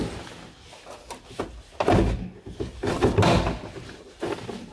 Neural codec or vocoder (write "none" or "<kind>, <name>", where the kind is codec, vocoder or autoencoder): none